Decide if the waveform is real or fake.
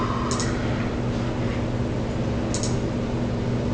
real